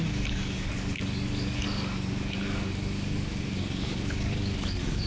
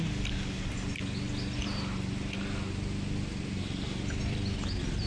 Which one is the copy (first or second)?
first